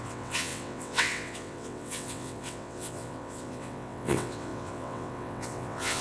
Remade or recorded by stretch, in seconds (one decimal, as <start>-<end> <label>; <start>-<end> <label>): 0.0-6.0 remade